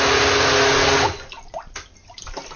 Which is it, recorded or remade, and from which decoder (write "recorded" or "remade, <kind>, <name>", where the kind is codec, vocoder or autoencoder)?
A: recorded